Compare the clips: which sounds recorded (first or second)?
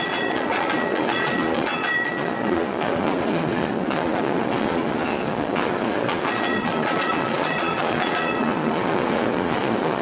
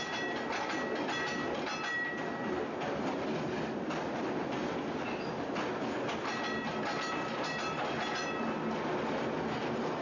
second